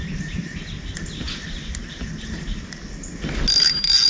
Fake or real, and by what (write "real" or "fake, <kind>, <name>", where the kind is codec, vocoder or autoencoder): real